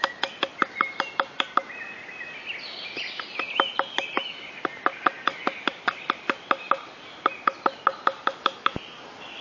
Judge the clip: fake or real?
real